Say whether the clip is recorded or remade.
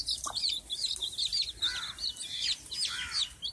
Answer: recorded